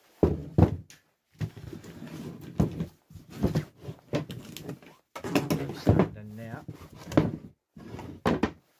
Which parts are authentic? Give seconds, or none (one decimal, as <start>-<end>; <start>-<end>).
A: 0.0-8.8